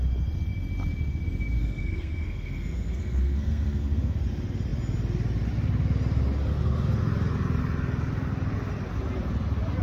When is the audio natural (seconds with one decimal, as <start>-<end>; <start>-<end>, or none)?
0.0-1.6; 4.2-9.8

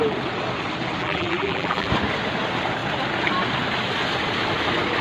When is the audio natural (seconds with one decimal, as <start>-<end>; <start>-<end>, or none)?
0.0-1.0; 1.9-5.0